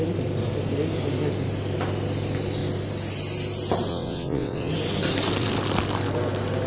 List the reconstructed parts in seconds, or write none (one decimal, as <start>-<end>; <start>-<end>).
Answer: 3.9-4.7